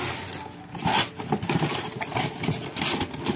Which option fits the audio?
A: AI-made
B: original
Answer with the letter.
B